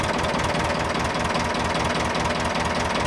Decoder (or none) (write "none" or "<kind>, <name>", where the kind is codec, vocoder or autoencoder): none